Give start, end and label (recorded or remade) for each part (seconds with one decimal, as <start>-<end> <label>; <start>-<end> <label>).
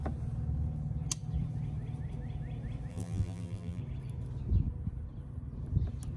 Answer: 0.0-2.9 recorded; 2.9-3.8 remade; 3.8-6.2 recorded